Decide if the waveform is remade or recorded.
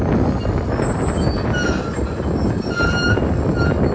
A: recorded